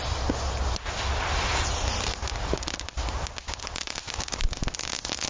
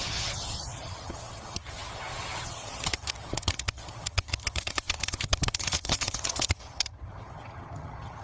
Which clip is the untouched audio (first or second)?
first